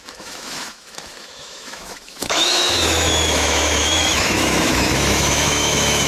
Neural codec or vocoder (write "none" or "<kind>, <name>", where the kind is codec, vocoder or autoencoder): autoencoder, DAC-VAE